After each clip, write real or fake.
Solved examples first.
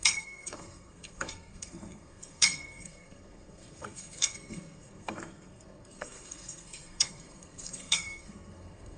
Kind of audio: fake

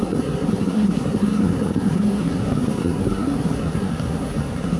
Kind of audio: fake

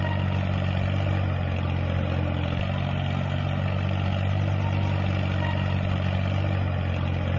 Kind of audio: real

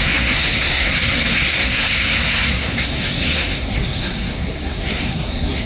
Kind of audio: fake